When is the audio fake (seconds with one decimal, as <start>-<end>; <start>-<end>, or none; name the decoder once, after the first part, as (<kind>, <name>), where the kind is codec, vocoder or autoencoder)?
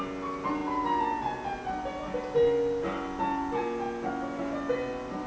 none